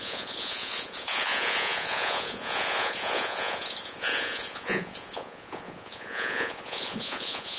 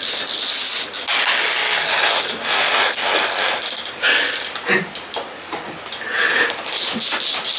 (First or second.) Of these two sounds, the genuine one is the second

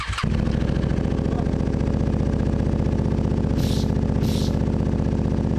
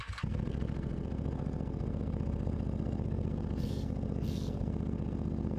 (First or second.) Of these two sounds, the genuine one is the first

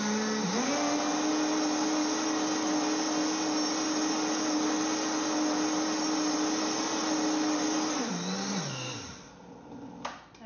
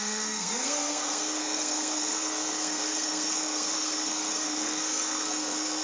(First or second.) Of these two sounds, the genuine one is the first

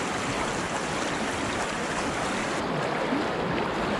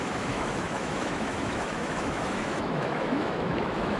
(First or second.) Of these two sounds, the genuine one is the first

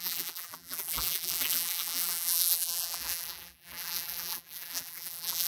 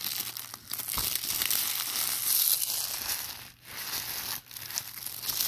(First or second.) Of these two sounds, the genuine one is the second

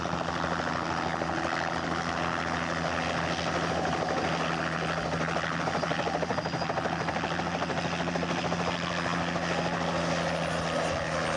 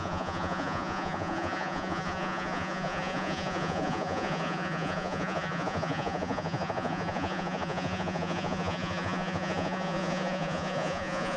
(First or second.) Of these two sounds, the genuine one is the first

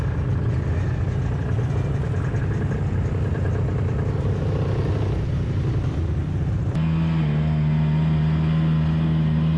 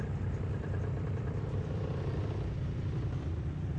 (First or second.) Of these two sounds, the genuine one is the first